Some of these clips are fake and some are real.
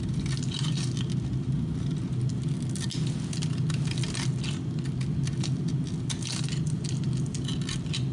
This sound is real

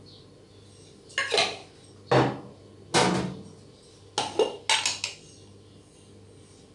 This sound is real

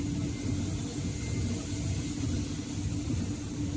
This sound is real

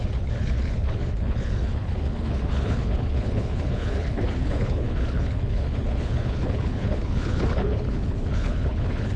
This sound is fake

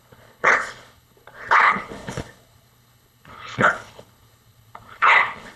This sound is fake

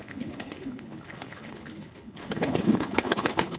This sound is fake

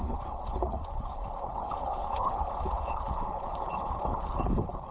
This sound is fake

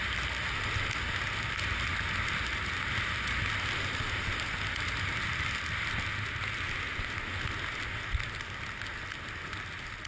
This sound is real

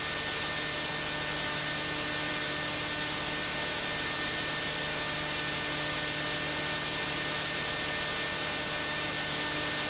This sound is real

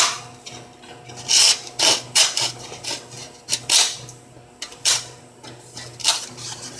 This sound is real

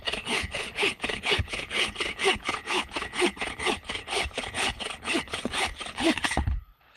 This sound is fake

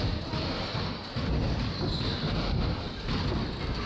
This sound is real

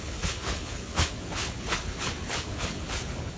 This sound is fake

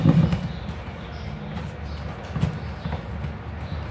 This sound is real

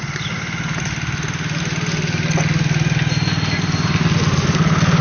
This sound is real